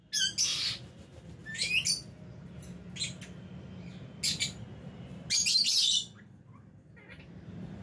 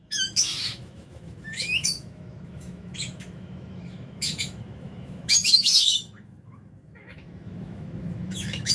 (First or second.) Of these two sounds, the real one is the first